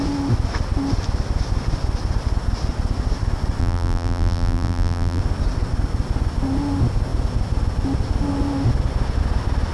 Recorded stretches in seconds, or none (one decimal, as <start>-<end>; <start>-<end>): 0.0-3.6; 5.2-9.7